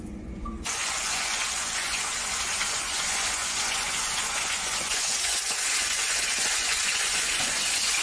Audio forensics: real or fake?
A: fake